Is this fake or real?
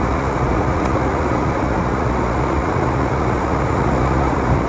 fake